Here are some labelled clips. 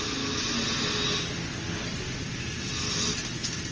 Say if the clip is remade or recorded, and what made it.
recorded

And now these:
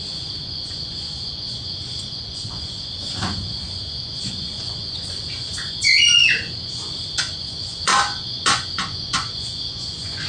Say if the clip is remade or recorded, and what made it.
remade, vocoder, Vocos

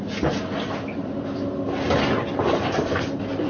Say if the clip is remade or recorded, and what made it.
recorded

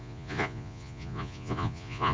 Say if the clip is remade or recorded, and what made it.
remade, vocoder, Vocos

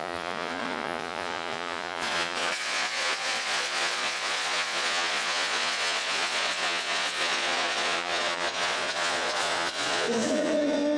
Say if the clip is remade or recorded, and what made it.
remade, vocoder, Vocos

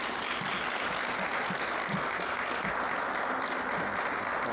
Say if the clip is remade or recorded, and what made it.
recorded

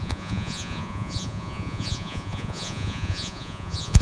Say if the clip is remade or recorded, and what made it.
remade, vocoder, Vocos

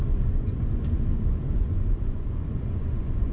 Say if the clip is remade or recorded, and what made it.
remade, vocoder, Vocos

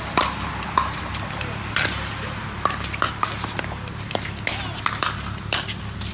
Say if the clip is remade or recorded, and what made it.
recorded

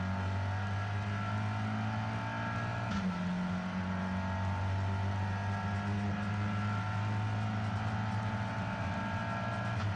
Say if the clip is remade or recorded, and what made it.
recorded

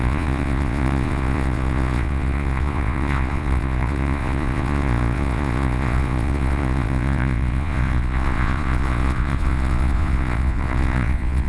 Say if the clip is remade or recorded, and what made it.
remade, vocoder, Vocos